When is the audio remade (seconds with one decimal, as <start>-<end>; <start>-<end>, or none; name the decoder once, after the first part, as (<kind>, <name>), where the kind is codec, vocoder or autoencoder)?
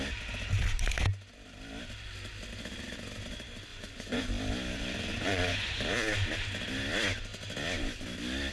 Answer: 3.7-4.3 (vocoder, Vocos); 5.1-5.8